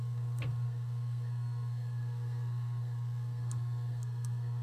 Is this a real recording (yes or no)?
no